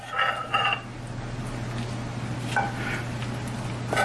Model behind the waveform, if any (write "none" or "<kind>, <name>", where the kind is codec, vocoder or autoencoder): none